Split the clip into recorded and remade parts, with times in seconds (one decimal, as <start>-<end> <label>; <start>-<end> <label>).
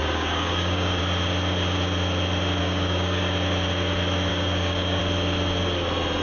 0.0-1.0 remade; 1.0-2.6 recorded; 2.6-3.2 remade; 3.2-4.3 recorded; 4.3-5.0 remade; 5.0-6.2 recorded